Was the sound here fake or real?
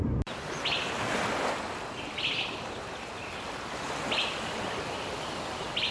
real